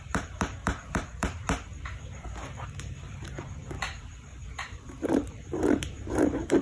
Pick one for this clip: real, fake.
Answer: fake